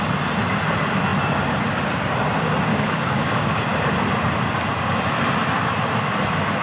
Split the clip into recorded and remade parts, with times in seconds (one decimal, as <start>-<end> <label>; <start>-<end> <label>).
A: 0.0-2.7 recorded; 2.7-3.6 remade; 3.6-6.6 recorded